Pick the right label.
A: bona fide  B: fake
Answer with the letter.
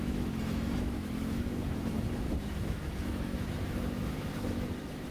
B